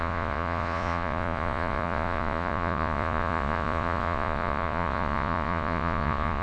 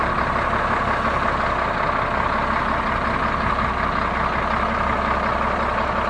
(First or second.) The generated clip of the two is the first